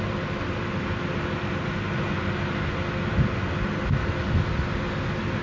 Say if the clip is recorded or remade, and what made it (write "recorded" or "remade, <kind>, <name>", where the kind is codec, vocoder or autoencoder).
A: recorded